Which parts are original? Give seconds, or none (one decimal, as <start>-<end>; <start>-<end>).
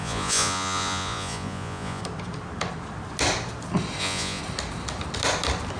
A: 2.0-4.0; 4.4-5.8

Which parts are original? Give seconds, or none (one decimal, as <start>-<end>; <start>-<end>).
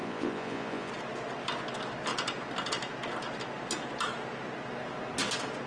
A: 0.9-5.7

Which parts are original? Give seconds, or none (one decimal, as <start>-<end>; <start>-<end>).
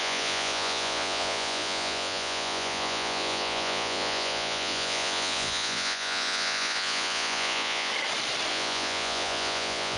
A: 7.9-8.5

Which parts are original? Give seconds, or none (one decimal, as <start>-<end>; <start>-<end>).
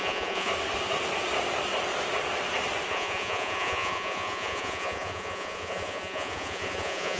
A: 0.5-2.9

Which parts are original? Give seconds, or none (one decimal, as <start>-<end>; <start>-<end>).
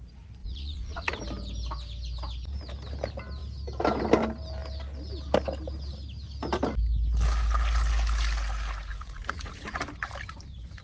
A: 0.0-0.4; 1.2-8.9; 9.8-10.8